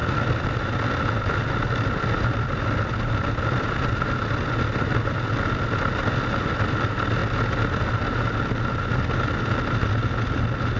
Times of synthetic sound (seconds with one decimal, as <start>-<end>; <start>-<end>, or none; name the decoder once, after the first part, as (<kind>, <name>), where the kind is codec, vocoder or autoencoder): none